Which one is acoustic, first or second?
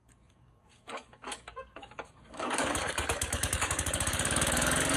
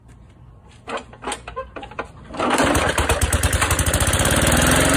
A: second